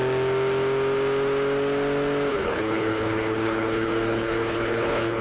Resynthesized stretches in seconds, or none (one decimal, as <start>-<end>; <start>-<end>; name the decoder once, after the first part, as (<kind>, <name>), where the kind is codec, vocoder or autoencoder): 2.3-5.2 (codec, HILCodec)